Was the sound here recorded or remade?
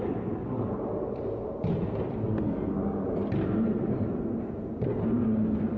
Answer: recorded